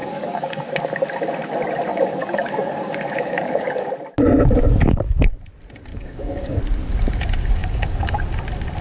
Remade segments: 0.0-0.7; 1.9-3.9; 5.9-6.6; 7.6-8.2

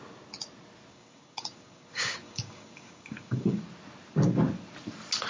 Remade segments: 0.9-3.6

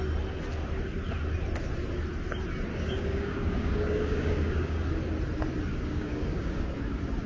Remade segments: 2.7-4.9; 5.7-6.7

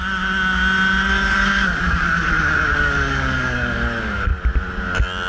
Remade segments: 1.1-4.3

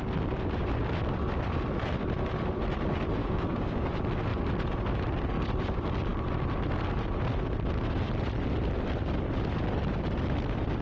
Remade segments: 3.2-3.9

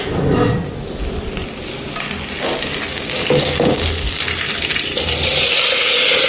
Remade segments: 2.9-3.8